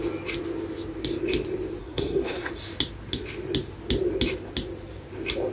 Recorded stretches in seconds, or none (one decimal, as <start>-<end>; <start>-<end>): 0.0-1.8; 2.5-5.5